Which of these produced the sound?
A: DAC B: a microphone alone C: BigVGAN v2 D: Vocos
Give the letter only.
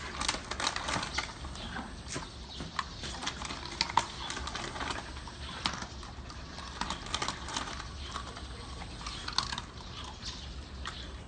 B